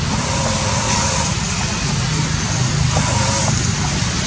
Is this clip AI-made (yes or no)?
no